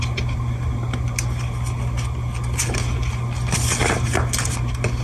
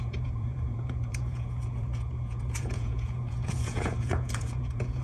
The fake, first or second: second